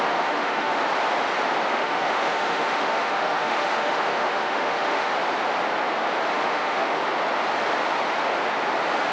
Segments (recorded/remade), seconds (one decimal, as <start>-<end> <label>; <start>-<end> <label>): 0.0-0.8 remade; 0.8-1.7 recorded; 1.7-5.1 remade; 5.1-6.3 recorded; 6.3-7.0 remade; 7.0-9.1 recorded